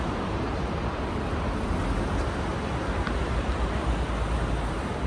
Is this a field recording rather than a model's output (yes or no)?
yes